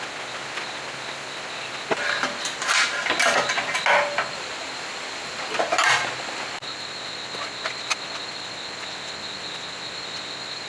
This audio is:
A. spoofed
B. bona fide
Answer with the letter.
B